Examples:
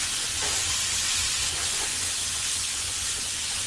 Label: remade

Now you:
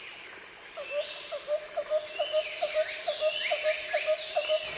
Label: recorded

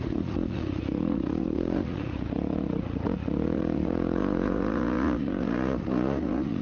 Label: remade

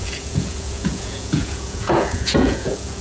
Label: remade